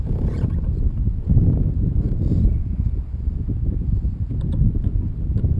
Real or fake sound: real